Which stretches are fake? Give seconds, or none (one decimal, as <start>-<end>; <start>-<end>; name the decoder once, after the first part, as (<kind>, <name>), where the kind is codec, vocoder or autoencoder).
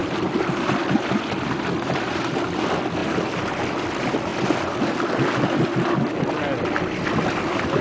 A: none